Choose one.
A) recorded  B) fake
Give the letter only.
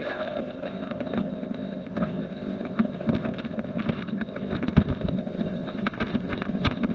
B